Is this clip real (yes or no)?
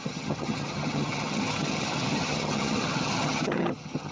no